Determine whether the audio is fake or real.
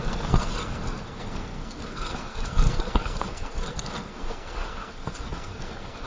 fake